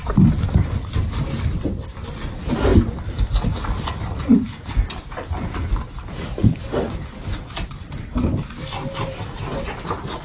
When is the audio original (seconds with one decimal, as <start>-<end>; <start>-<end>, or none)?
0.0-10.2